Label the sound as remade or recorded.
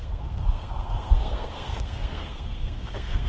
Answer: remade